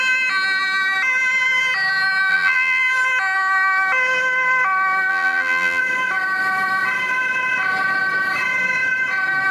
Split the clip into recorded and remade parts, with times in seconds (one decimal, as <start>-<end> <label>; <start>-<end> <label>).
0.0-2.3 recorded; 2.3-2.8 remade; 2.8-5.1 recorded; 5.1-5.8 remade; 5.8-9.5 recorded